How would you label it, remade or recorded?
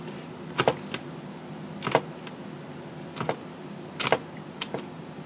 recorded